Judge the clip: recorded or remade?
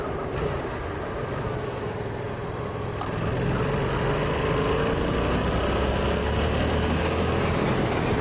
recorded